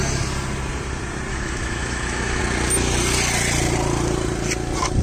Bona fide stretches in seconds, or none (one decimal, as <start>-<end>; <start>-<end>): 0.0-1.3; 2.4-5.0